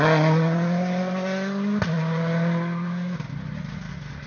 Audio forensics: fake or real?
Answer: real